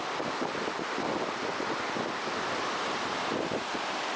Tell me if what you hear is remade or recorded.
recorded